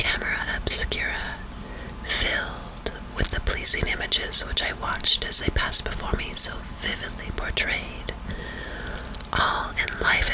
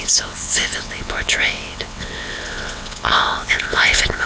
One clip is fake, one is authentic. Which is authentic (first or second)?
first